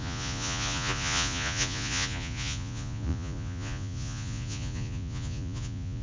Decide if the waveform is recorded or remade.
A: remade